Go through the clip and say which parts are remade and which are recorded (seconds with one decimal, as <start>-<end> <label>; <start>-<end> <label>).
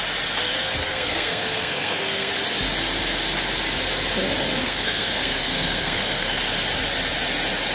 0.0-0.8 recorded; 0.8-2.3 remade; 2.3-4.6 recorded; 4.6-6.4 remade; 6.4-7.7 recorded